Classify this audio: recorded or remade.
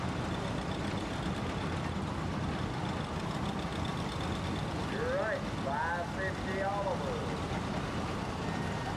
recorded